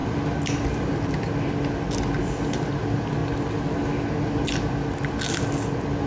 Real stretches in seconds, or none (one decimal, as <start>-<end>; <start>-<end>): 0.0-6.1